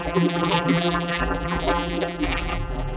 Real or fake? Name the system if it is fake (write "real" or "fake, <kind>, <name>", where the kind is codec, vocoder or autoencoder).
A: fake, vocoder, BigVGAN v2